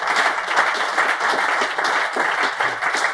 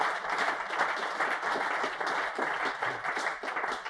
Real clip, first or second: first